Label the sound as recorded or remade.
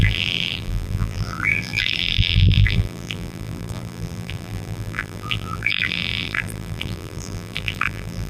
remade